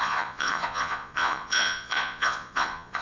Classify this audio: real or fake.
fake